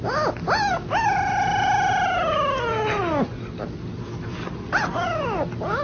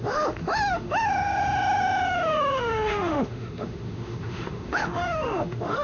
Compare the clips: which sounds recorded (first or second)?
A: first